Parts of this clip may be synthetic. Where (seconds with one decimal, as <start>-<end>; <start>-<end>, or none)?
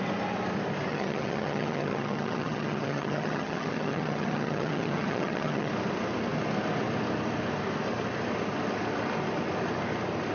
0.9-5.7